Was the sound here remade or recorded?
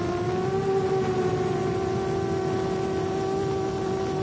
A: recorded